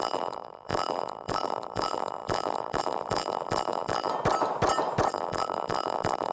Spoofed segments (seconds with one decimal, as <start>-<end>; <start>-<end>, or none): 0.0-4.1; 5.1-6.3